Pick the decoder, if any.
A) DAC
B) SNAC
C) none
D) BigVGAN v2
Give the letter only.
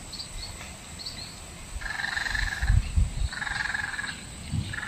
C